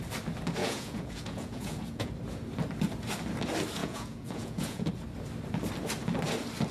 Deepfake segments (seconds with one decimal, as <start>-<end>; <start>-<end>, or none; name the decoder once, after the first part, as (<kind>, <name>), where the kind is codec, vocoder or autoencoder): 0.6-2.1 (vocoder, Vocos); 3.8-4.9